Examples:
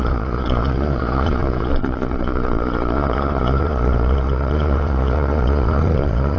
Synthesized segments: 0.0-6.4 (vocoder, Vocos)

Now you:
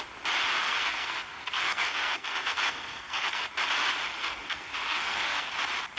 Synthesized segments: 0.6-3.5 (codec, SNAC); 4.1-5.5

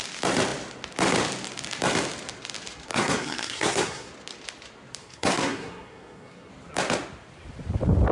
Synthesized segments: 2.9-4.1 (codec, SNAC); 5.0-6.5